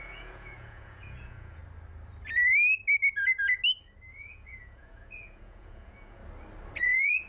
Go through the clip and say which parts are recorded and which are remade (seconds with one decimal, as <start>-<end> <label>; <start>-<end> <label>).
0.0-1.6 remade; 1.6-4.1 recorded; 4.1-6.2 remade; 6.2-6.8 recorded; 6.8-7.3 remade